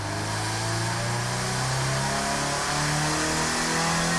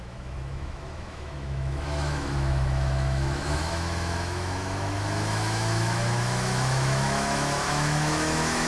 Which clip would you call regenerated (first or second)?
second